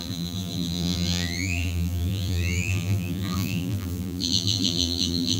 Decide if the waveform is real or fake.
fake